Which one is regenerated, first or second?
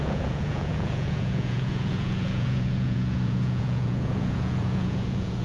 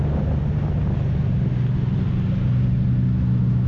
first